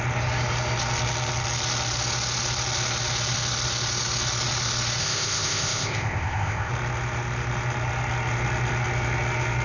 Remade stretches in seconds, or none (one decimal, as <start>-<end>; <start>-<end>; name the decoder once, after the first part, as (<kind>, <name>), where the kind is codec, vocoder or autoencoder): 5.0-6.7 (codec, ZipCodec)